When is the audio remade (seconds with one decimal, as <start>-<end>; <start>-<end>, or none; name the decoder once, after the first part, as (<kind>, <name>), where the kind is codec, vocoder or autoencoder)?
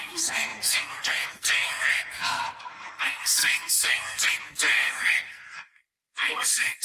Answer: 0.0-6.8 (codec, SNAC)